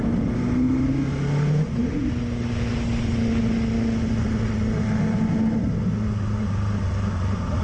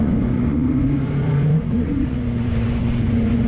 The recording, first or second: first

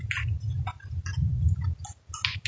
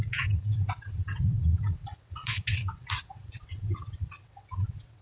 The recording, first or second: first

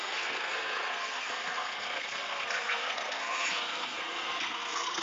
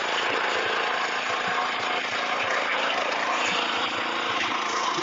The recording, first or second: second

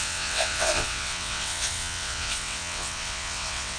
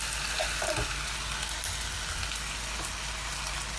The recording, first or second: second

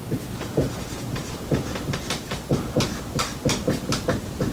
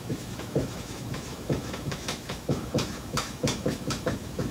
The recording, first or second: first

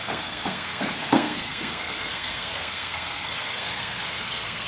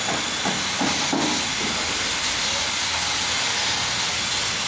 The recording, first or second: second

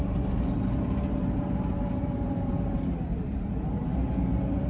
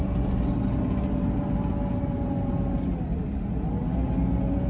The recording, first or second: second